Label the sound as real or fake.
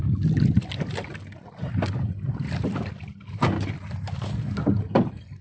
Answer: real